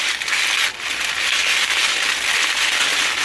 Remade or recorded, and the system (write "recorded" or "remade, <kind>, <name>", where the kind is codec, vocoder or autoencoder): recorded